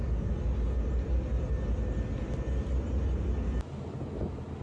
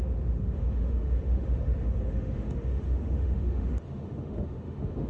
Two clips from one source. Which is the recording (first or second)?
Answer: first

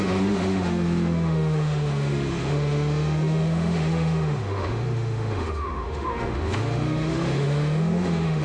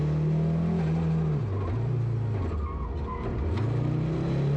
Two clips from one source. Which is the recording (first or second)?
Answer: second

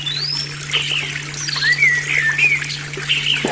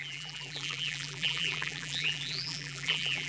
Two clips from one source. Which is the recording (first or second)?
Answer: first